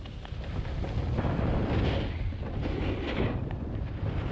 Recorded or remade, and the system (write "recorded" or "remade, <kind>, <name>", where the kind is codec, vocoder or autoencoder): recorded